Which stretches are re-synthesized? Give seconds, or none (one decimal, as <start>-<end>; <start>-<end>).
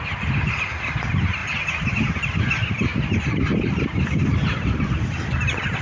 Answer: none